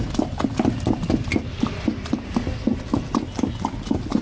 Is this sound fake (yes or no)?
no